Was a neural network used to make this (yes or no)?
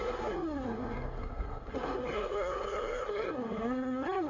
yes